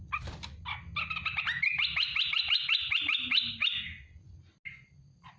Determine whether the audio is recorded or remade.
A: recorded